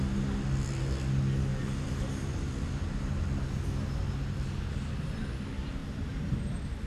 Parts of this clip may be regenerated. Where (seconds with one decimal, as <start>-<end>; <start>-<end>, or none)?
1.5-3.1; 5.8-6.4